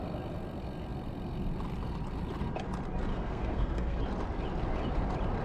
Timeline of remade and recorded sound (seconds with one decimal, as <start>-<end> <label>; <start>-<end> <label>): 0.0-3.1 recorded; 3.1-4.0 remade; 4.0-5.4 recorded